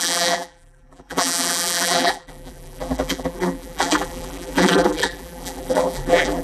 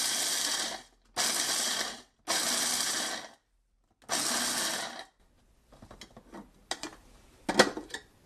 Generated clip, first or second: first